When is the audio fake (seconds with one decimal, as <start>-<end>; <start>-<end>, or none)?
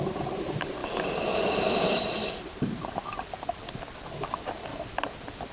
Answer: 0.0-4.7